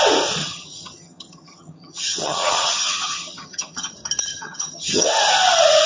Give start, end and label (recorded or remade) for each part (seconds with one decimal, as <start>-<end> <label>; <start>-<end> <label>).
0.0-0.4 recorded; 0.4-3.9 remade; 3.9-4.3 recorded; 4.3-5.1 remade; 5.1-5.9 recorded